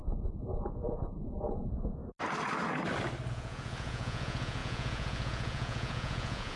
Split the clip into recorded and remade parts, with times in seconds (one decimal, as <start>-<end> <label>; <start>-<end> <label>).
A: 0.0-2.0 remade; 2.0-3.3 recorded; 3.3-6.6 remade